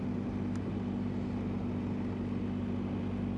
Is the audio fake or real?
real